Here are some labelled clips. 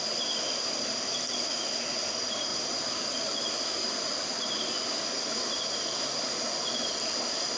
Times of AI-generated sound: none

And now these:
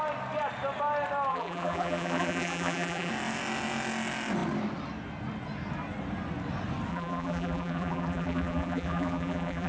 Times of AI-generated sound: 1.3-3.1 (vocoder, BigVGAN v2); 6.9-9.7

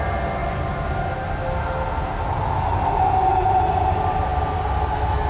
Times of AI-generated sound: none

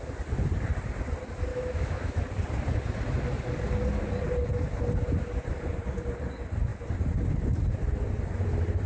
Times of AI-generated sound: 1.5-2.2 (autoencoder, DAC-VAE)

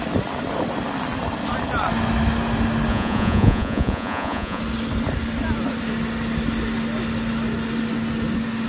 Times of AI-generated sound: 2.9-4.6 (vocoder, Vocos)